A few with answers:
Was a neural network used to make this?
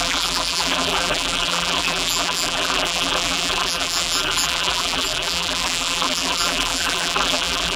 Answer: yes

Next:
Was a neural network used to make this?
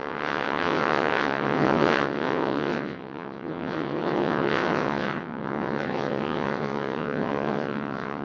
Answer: yes